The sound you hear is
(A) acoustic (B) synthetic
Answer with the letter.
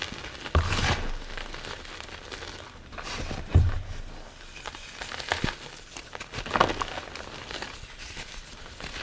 A